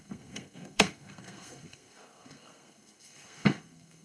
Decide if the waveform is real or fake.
fake